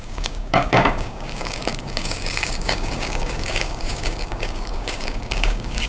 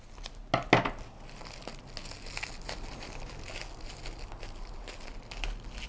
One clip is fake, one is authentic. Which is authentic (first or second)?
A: second